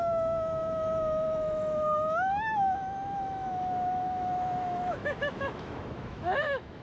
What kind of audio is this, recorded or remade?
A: remade